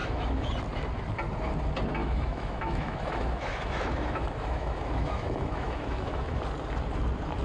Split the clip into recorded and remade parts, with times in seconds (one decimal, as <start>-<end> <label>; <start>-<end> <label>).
0.0-0.5 remade; 0.5-2.0 recorded; 2.0-6.4 remade; 6.4-7.4 recorded